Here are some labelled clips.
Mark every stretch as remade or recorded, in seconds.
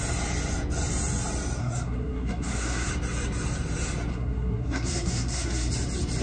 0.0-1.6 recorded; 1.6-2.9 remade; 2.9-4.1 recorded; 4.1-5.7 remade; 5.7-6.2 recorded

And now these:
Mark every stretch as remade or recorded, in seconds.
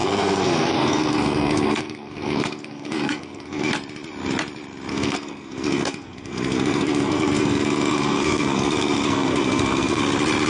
0.0-3.7 remade; 3.7-4.9 recorded; 4.9-10.0 remade; 10.0-10.5 recorded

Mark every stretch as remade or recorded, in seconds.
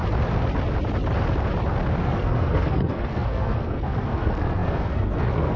0.0-2.0 recorded; 2.0-5.6 remade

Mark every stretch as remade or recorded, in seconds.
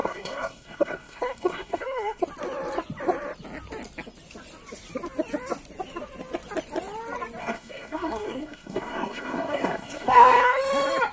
0.0-2.2 remade; 2.2-7.4 recorded; 7.4-10.6 remade; 10.6-11.1 recorded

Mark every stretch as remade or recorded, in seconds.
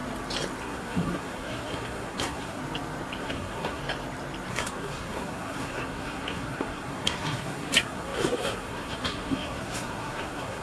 0.0-0.6 recorded; 0.6-2.6 remade; 2.6-3.2 recorded; 3.2-3.8 remade; 3.8-4.5 recorded; 4.5-10.6 remade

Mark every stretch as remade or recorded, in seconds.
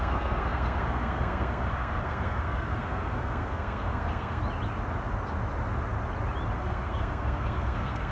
0.0-4.4 remade; 4.4-6.6 recorded; 6.6-8.1 remade